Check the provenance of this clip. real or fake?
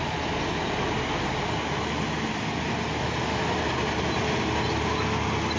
real